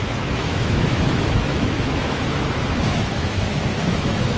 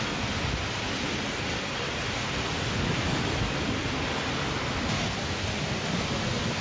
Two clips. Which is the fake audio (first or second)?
first